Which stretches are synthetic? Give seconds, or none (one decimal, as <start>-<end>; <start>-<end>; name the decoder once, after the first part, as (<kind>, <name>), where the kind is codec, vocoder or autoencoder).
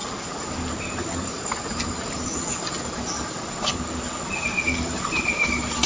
0.7-2.3 (vocoder, BigVGAN v2); 4.4-5.9